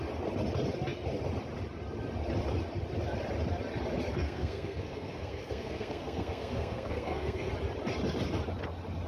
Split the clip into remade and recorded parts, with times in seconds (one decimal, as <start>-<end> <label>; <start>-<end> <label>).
0.0-4.1 recorded; 4.1-7.5 remade; 7.5-9.1 recorded